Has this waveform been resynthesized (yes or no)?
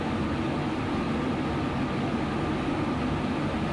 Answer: no